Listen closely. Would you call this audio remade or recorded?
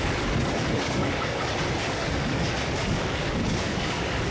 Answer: remade